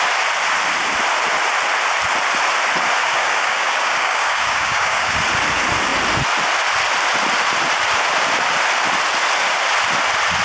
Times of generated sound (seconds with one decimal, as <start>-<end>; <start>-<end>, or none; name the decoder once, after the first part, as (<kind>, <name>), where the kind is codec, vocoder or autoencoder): 3.0-5.2 (codec, DAC)